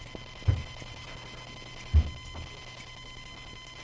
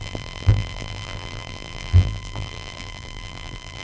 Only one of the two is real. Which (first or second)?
first